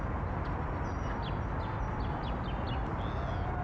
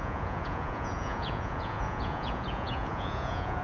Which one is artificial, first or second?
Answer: second